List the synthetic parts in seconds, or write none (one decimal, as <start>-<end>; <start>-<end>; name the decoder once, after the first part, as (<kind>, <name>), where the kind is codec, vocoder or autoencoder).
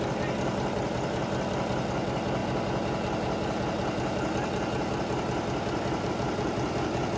none